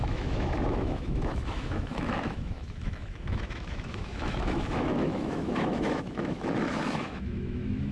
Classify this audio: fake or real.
fake